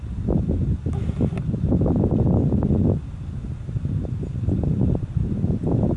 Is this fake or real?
real